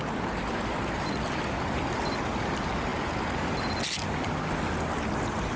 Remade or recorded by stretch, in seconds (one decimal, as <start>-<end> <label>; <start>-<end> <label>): 0.0-5.6 recorded